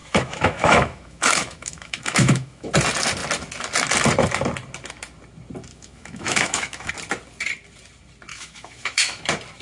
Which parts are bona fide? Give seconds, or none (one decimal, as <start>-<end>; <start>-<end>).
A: 2.7-5.7; 6.9-8.3; 9.2-9.6